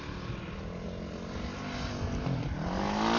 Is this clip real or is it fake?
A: real